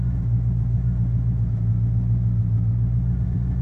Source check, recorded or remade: recorded